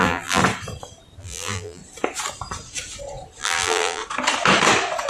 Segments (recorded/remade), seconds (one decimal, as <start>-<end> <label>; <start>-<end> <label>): 0.0-0.4 remade; 0.4-1.2 recorded; 1.2-1.8 remade; 1.8-3.4 recorded; 3.4-4.0 remade; 4.0-5.1 recorded